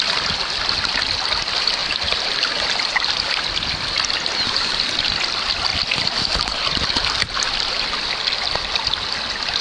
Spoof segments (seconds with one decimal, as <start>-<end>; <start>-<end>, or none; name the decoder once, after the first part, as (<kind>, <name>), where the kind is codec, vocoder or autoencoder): none